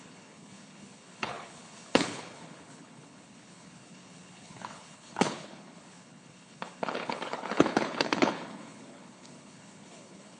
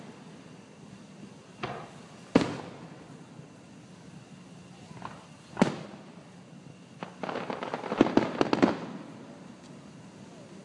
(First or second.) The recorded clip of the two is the second